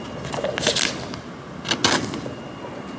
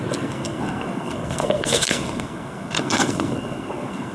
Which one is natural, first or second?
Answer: first